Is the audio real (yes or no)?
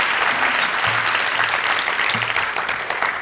yes